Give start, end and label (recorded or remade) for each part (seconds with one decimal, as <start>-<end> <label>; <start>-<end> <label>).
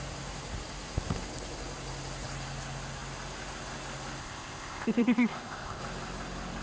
0.0-4.2 recorded; 4.2-5.8 remade; 5.8-6.6 recorded